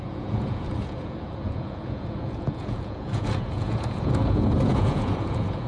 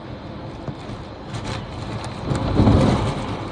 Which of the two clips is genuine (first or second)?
second